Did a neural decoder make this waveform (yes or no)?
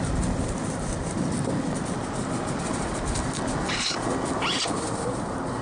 no